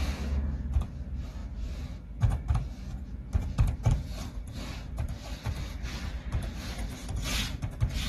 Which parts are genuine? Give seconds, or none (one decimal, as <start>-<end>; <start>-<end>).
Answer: 1.4-3.8; 7.0-7.5